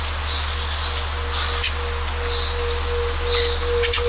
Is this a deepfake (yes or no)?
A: no